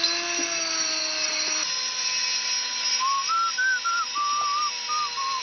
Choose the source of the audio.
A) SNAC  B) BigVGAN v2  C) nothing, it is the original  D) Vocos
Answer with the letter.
C